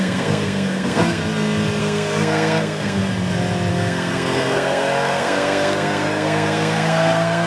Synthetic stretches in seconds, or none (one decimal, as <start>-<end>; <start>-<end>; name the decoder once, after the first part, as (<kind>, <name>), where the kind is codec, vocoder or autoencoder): 0.0-1.2 (codec, SNAC); 1.8-3.0; 3.7-7.5